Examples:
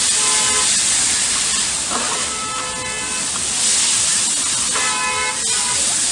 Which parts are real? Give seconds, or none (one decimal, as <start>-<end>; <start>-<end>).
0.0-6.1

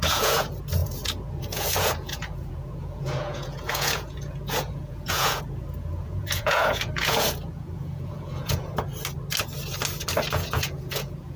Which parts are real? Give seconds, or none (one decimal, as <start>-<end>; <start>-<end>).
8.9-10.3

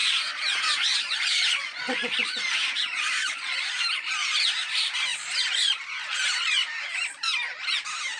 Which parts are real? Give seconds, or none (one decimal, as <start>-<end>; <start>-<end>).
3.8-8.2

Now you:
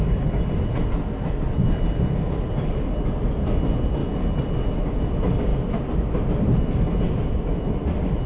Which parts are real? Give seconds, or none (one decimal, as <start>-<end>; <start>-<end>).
0.0-8.3

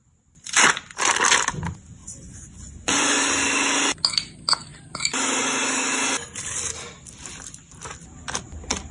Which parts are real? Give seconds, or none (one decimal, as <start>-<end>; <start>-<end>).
0.0-2.0; 3.2-8.9

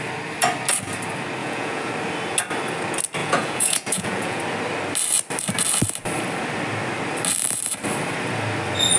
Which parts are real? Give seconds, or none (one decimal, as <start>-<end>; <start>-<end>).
0.0-1.4; 1.9-3.2; 4.4-9.0

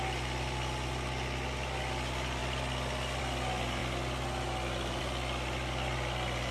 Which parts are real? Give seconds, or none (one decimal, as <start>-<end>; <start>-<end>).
0.0-6.5

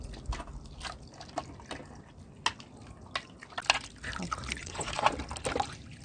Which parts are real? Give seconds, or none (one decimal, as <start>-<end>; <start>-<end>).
0.0-4.6; 5.1-6.0